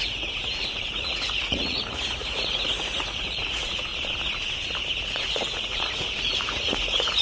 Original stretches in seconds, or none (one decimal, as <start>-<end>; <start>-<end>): 3.9-5.0